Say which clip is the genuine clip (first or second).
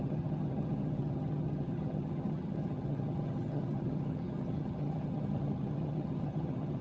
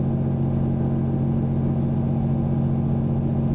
second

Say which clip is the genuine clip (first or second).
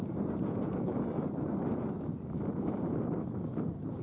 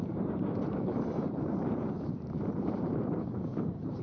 first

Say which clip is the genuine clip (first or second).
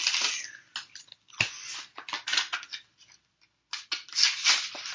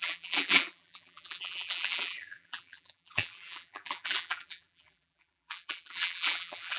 first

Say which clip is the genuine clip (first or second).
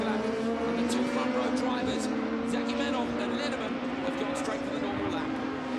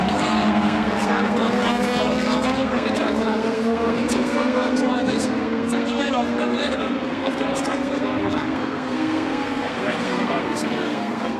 first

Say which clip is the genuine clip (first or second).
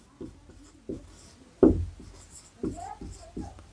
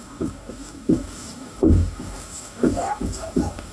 first